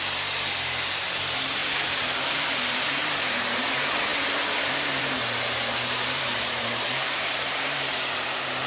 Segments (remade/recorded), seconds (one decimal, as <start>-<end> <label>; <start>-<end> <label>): 0.0-8.7 remade